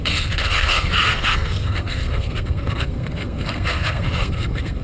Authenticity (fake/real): fake